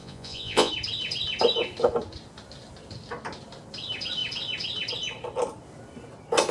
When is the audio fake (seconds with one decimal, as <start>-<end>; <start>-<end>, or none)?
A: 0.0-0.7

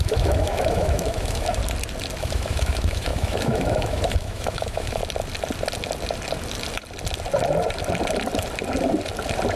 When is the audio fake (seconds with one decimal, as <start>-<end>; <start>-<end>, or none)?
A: 0.0-1.6; 2.2-5.0

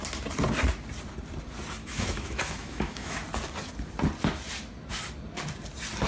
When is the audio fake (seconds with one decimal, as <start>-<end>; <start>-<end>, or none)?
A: 1.8-3.2